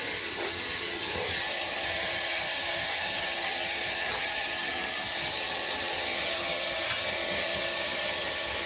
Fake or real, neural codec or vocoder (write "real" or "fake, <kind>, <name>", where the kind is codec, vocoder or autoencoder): fake, vocoder, HiFi-GAN